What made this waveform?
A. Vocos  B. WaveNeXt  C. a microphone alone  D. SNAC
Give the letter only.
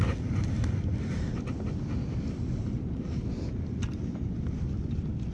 C